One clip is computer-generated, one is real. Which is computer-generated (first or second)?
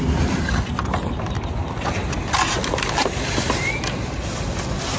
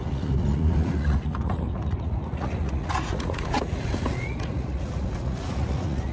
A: second